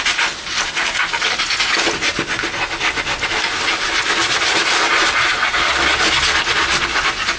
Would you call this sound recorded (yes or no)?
yes